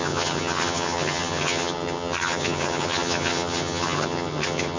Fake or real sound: fake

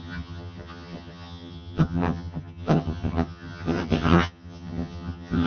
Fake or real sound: fake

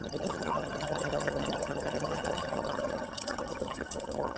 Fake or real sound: fake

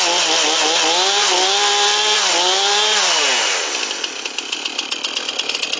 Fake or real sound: real